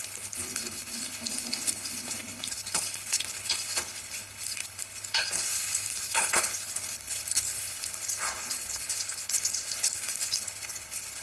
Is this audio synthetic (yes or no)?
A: yes